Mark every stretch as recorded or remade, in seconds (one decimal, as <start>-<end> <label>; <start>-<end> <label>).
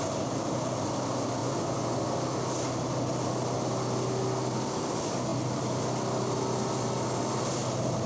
0.0-1.4 recorded; 1.4-2.0 remade; 2.0-8.1 recorded